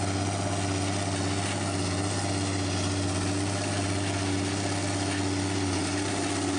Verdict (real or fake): real